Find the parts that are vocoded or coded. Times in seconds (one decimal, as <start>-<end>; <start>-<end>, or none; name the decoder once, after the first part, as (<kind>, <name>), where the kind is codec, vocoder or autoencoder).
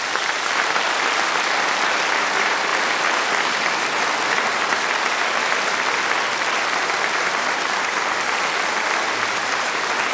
none